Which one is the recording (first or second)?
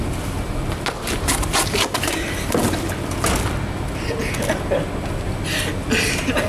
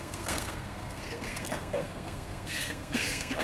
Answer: first